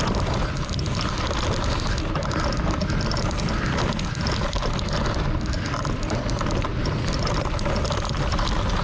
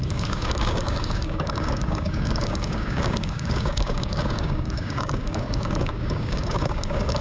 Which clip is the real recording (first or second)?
first